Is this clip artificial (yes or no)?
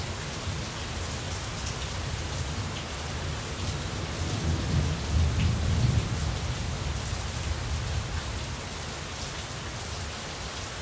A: no